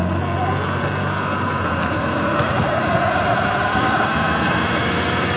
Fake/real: real